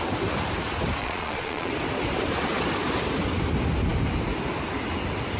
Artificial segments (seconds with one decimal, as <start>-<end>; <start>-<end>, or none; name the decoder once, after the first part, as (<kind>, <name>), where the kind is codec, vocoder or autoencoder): 1.0-1.7 (vocoder, Vocos)